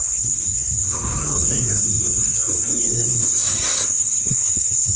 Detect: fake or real fake